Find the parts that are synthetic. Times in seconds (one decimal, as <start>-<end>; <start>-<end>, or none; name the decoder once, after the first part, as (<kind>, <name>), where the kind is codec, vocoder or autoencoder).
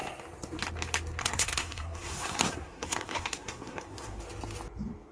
1.2-4.2 (codec, SNAC)